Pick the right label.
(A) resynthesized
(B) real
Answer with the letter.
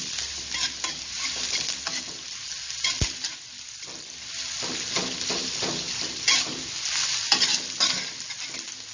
B